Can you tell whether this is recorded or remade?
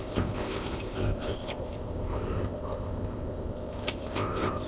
remade